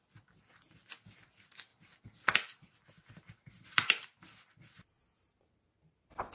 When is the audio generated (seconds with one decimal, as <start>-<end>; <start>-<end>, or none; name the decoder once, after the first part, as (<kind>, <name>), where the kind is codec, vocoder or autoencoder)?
none